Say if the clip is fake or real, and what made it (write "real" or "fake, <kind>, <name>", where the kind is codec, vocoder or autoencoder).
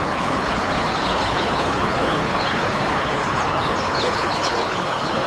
fake, codec, HILCodec